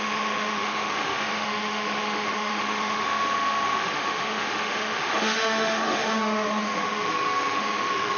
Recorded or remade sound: remade